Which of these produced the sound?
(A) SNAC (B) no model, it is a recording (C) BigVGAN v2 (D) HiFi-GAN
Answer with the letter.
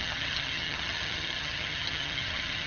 D